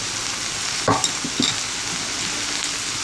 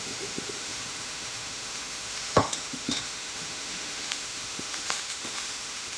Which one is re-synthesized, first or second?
second